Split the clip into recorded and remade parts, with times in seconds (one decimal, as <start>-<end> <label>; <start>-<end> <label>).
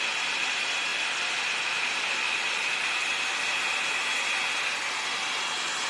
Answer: 0.0-5.9 recorded